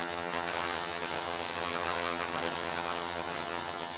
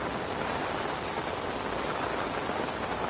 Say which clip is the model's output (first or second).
first